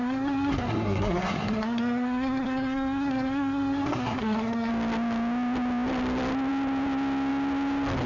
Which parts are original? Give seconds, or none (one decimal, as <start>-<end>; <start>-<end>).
4.7-8.1